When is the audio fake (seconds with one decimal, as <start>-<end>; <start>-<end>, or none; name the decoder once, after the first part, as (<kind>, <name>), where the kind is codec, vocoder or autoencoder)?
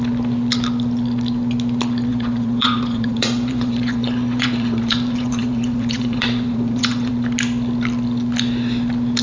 2.1-7.1 (vocoder, Vocos)